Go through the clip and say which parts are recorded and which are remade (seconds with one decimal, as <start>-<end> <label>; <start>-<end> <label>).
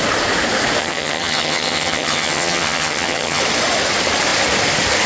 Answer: 0.0-0.8 recorded; 0.8-3.4 remade; 3.4-5.1 recorded